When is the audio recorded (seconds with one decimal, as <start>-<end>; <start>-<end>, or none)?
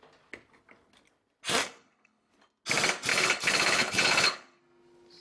0.0-1.6; 2.3-3.1; 4.6-5.2